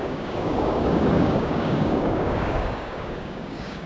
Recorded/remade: remade